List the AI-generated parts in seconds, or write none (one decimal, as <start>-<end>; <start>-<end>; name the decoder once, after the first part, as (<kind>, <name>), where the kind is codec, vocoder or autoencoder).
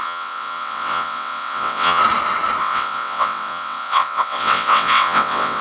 0.0-2.0 (vocoder, WaveNeXt); 2.6-5.6